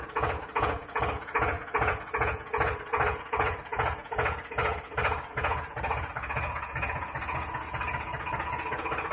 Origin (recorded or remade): remade